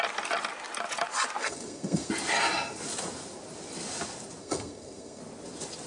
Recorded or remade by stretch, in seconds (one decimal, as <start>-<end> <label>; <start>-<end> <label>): 0.0-1.4 recorded; 1.4-2.1 remade; 2.1-4.4 recorded; 4.4-5.2 remade; 5.2-5.9 recorded